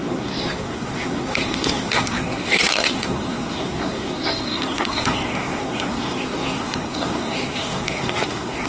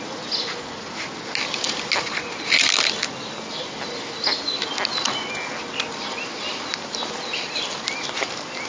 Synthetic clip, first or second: first